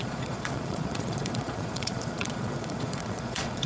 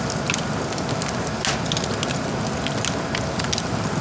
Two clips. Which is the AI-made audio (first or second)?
first